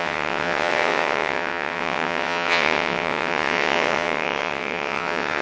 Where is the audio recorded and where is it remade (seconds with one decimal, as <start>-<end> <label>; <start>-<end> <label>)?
0.0-5.4 remade